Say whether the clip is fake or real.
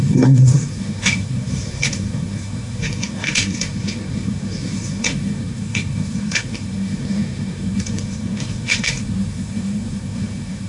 fake